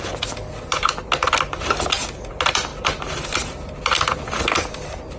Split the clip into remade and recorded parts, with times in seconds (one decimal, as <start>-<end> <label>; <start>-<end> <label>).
0.0-5.2 recorded